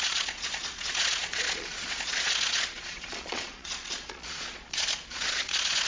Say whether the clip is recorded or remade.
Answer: remade